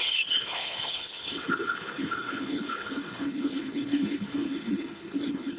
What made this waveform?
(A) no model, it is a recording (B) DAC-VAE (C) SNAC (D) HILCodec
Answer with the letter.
D